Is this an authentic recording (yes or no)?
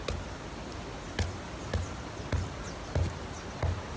yes